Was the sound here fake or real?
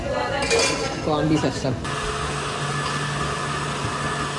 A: real